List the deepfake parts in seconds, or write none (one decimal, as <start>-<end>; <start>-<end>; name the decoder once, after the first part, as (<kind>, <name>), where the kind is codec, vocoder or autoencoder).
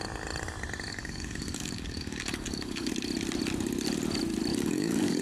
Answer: 0.9-2.9 (codec, DAC); 4.5-5.2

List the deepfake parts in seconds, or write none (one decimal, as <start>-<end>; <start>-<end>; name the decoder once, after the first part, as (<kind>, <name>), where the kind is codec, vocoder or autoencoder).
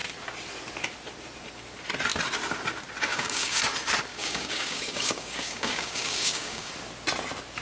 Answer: 3.1-3.6 (codec, DAC); 4.1-6.7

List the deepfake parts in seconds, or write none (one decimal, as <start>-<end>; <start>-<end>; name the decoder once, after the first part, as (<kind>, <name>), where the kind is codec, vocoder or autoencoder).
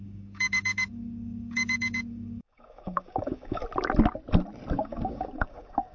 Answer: 0.0-3.6 (codec, DAC); 4.7-5.9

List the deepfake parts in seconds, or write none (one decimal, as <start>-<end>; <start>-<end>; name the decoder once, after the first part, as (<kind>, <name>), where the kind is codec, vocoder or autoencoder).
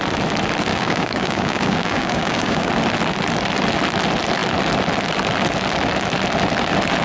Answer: 0.7-2.7 (codec, DAC)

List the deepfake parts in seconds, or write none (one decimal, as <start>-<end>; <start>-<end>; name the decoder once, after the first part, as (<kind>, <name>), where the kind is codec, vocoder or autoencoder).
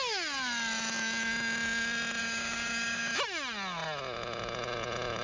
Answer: 2.2-3.1 (codec, DAC)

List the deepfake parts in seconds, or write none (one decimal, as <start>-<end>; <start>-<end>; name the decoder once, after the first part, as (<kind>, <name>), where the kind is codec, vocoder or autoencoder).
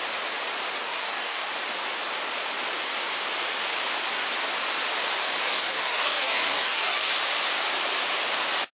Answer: 0.8-1.5 (codec, DAC); 5.4-7.1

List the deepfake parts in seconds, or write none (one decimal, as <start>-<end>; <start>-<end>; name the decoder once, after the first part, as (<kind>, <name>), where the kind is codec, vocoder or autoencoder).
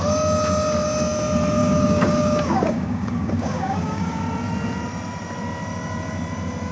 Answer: 1.6-4.2 (codec, DAC)